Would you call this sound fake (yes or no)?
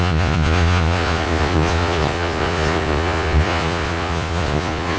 yes